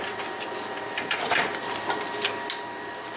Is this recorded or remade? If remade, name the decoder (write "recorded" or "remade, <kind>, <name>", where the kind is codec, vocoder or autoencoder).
remade, vocoder, BigVGAN v2